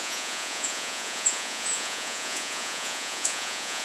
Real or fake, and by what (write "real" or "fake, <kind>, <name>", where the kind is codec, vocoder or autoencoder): fake, vocoder, Vocos